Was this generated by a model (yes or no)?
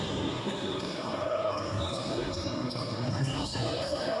yes